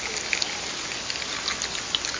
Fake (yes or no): no